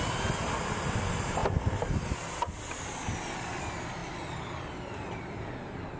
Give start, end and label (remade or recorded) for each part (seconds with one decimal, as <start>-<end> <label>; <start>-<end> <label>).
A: 0.0-1.4 remade; 1.4-3.6 recorded; 3.6-6.0 remade